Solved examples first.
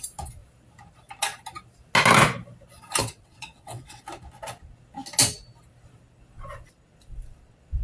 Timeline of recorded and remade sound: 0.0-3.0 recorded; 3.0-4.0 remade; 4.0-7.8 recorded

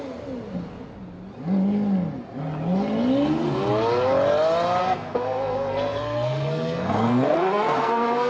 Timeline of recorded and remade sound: 0.0-4.8 recorded; 4.8-8.3 remade

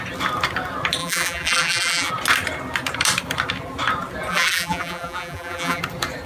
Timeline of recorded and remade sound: 0.0-1.0 recorded; 1.0-2.1 remade; 2.1-4.3 recorded; 4.3-5.8 remade; 5.8-6.3 recorded

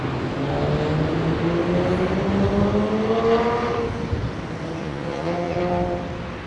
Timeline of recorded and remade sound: 0.0-4.8 recorded; 4.8-5.6 remade; 5.6-6.5 recorded

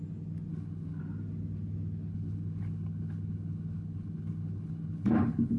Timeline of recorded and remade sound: 0.0-0.5 recorded; 0.5-1.0 remade; 1.0-2.1 recorded; 2.1-5.6 remade

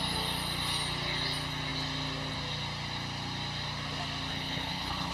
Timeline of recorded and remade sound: 0.0-4.3 recorded; 4.3-5.1 remade

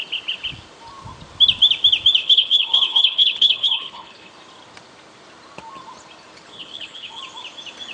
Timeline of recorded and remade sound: 0.0-2.2 recorded; 2.2-4.3 remade; 4.3-6.5 recorded; 6.5-7.2 remade; 7.2-7.9 recorded